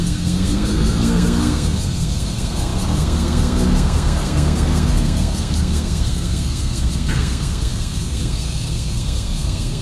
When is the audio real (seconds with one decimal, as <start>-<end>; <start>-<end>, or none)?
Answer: none

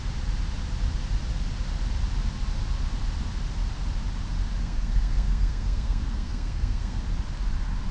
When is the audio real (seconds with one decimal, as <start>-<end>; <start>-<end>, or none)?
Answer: 0.0-4.6; 7.0-7.9

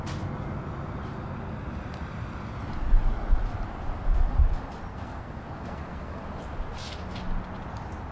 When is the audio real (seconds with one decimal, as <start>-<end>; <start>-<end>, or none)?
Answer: 0.0-4.9; 6.2-8.1

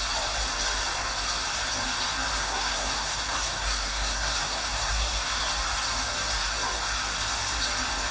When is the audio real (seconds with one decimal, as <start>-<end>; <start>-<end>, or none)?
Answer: 0.0-2.4; 5.4-8.1

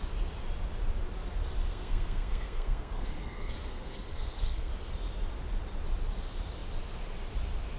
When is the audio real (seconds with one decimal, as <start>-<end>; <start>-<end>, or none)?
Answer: 0.0-1.7; 4.7-7.8

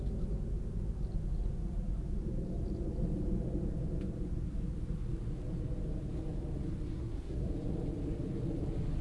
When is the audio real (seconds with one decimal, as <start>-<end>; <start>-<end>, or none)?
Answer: 0.0-6.9; 7.5-9.0

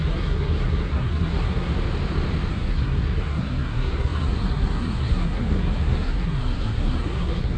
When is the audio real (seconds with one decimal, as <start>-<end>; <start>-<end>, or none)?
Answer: 1.7-2.5